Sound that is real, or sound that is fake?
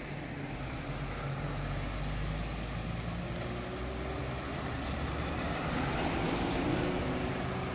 real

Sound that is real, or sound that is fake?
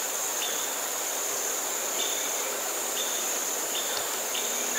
real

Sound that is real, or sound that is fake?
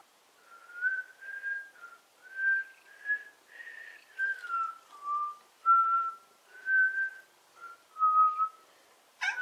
real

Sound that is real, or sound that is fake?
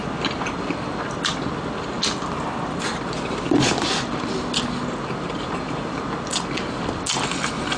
real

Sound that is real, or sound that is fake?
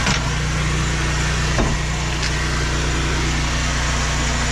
real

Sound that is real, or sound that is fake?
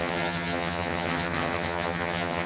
fake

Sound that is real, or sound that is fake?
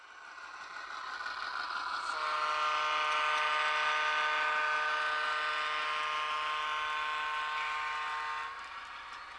real